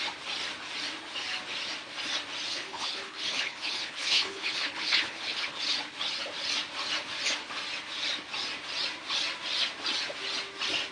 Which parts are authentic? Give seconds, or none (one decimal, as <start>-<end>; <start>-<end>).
0.0-2.5; 5.6-10.9